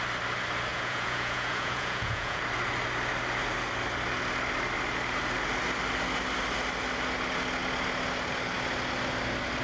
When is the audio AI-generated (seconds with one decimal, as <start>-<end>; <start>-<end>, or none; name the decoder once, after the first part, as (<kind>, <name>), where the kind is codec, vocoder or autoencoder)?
0.7-2.4 (vocoder, Vocos)